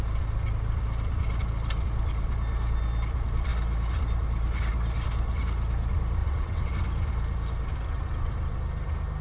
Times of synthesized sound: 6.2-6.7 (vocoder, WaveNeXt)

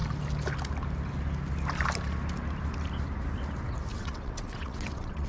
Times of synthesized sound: 3.9-5.3 (vocoder, WaveNeXt)

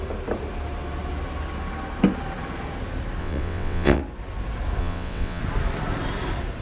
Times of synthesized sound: 3.2-4.0 (vocoder, WaveNeXt); 4.8-5.4

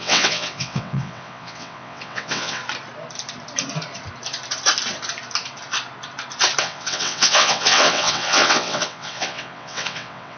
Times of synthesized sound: 0.0-2.6 (vocoder, WaveNeXt); 6.6-10.4

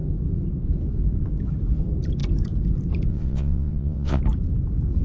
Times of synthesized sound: 3.1-4.2 (vocoder, WaveNeXt)

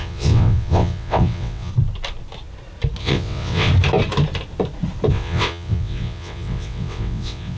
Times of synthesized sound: 0.0-1.7 (vocoder, WaveNeXt); 3.0-3.7; 5.1-7.6

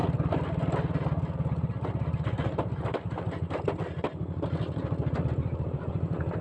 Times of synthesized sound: none

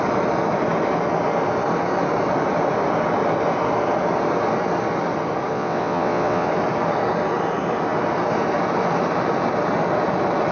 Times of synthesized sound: 5.5-6.5 (vocoder, WaveNeXt)